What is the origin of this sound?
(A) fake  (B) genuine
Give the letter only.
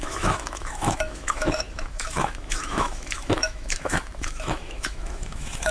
A